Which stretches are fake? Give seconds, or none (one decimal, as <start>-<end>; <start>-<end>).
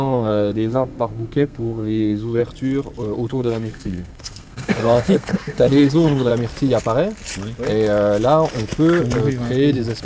0.0-2.4; 3.3-6.3